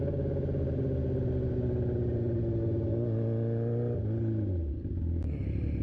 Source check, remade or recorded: recorded